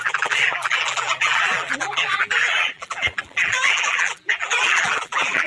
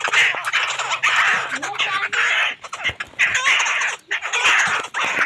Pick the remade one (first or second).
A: first